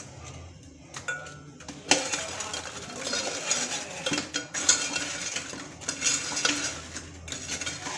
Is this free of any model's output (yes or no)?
yes